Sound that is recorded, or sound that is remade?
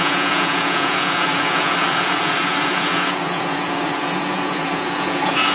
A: remade